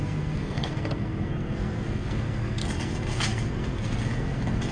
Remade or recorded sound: remade